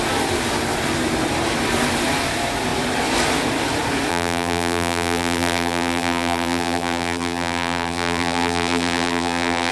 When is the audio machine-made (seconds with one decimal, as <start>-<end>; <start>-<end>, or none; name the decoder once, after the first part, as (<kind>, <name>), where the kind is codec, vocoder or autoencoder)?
4.1-9.7 (vocoder, BigVGAN v2)